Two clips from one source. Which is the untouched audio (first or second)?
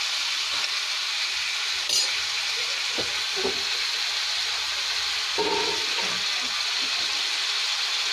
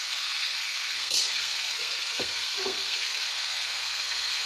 first